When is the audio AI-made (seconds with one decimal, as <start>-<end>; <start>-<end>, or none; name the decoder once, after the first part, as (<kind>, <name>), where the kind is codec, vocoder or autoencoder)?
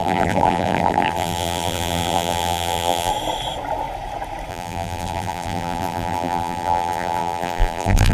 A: 0.0-3.1 (vocoder, BigVGAN v2); 4.5-8.1